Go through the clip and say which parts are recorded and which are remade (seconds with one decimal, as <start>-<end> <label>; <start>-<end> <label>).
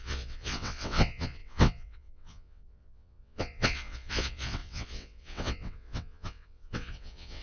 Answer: 0.0-7.4 remade